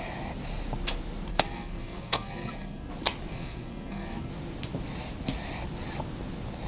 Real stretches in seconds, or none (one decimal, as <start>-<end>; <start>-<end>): 0.0-1.3; 2.9-3.3; 4.3-6.7